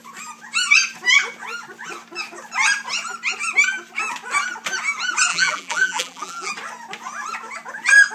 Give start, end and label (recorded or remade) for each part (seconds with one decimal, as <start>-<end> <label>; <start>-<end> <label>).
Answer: 0.0-5.3 recorded; 5.3-6.5 remade; 6.5-8.1 recorded